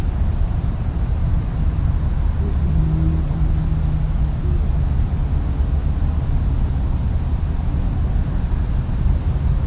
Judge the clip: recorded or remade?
recorded